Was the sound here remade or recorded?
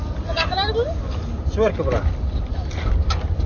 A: recorded